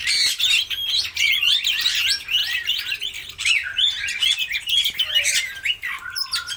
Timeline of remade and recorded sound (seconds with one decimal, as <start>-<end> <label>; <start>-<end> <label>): 0.0-6.6 recorded